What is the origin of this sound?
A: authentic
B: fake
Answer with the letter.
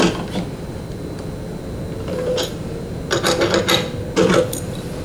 A